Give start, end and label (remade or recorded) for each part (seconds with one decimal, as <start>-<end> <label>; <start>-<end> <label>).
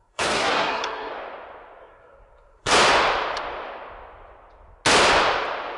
0.0-1.1 remade; 1.1-1.8 recorded; 1.8-2.7 remade; 2.7-5.8 recorded